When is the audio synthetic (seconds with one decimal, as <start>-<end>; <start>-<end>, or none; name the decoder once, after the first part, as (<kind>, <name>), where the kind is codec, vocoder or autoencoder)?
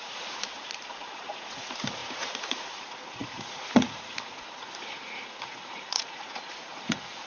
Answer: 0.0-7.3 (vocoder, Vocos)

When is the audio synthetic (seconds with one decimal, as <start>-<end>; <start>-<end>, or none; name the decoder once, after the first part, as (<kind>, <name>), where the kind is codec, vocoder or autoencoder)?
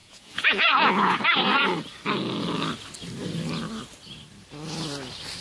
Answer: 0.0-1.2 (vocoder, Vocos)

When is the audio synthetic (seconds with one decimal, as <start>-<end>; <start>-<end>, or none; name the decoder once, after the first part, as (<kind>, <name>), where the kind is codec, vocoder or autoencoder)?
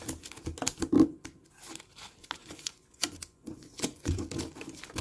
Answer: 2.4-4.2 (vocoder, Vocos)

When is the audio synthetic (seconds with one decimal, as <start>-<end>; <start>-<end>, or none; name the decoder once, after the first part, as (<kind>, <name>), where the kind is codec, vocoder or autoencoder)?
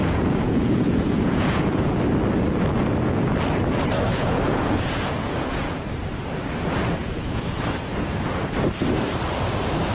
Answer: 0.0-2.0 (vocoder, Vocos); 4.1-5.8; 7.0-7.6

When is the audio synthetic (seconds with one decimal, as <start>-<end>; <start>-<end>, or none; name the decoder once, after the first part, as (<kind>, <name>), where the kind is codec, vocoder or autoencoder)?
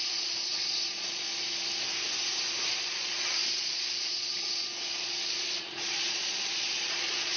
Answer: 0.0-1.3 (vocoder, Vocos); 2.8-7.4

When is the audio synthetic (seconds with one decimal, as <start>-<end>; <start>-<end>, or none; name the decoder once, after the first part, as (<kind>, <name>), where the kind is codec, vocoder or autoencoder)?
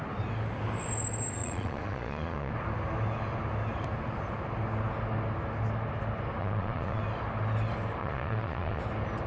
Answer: 1.4-2.5 (vocoder, Vocos); 6.4-7.0; 8.0-8.8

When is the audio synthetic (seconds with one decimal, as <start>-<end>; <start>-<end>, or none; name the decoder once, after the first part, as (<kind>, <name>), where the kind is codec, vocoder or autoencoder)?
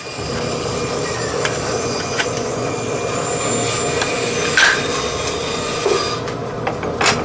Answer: 1.7-2.7 (vocoder, Vocos); 5.4-6.0